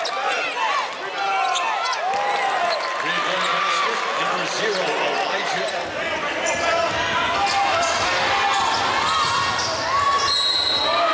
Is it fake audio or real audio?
real